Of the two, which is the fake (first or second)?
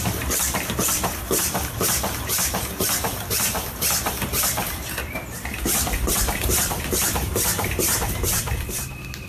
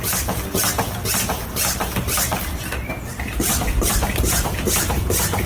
first